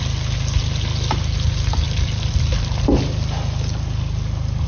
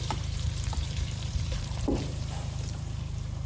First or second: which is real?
first